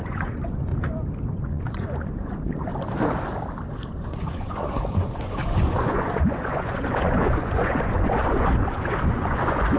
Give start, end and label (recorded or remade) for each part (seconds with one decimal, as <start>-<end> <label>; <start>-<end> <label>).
0.0-0.7 remade; 0.7-1.3 recorded; 1.3-2.7 remade; 2.7-3.9 recorded; 3.9-9.8 remade